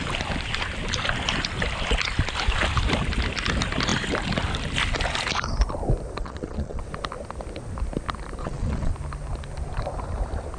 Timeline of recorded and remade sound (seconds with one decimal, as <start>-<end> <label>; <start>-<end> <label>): 0.0-6.2 recorded; 6.2-6.8 remade; 6.8-8.4 recorded; 8.4-8.9 remade; 8.9-10.6 recorded